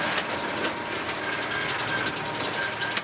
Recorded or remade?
recorded